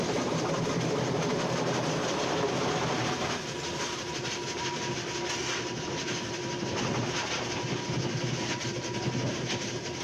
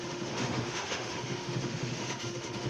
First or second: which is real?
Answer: first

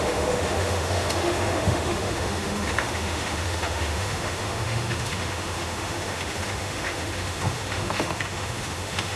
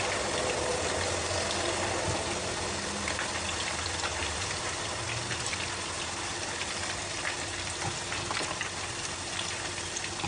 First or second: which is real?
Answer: second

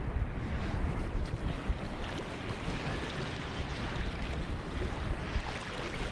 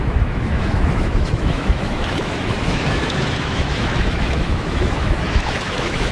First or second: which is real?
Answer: first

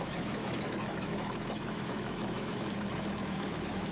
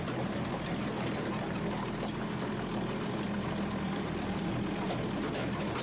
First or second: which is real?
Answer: second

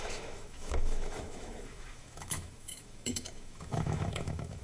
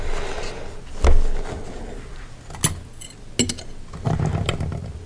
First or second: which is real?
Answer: second